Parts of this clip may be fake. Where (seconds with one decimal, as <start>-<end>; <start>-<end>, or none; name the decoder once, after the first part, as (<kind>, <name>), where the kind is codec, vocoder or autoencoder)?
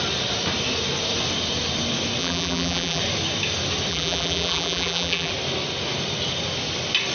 2.2-3.0 (vocoder, BigVGAN v2); 3.9-5.3